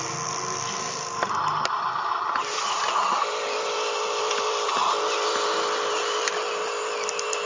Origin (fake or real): real